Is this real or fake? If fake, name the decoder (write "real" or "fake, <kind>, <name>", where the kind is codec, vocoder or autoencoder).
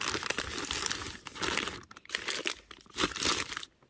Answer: real